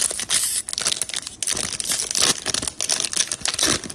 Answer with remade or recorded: recorded